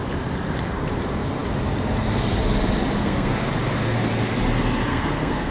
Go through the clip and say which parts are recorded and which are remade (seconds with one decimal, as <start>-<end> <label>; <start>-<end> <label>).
0.0-3.0 recorded; 3.0-3.5 remade; 3.5-4.9 recorded; 4.9-5.5 remade